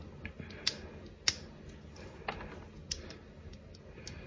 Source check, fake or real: real